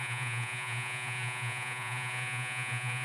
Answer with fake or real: fake